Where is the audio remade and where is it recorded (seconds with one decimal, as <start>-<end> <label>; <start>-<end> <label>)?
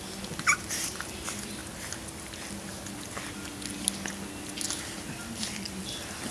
0.0-6.3 recorded